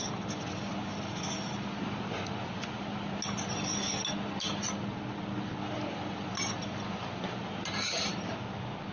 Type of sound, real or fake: real